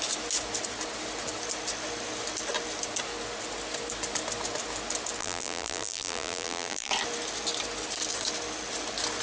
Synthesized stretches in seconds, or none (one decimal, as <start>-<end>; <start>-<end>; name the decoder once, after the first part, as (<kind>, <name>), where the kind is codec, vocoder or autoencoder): 5.2-6.9 (vocoder, BigVGAN v2)